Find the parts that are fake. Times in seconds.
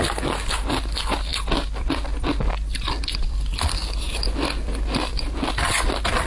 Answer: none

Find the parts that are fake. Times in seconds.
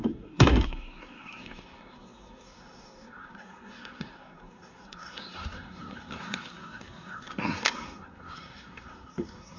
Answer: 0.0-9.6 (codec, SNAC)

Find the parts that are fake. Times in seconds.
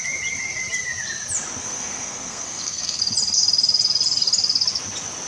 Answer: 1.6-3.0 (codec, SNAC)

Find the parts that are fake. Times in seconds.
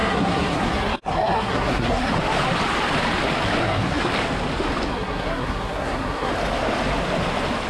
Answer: 0.0-2.1 (codec, SNAC); 3.6-4.1; 4.9-6.3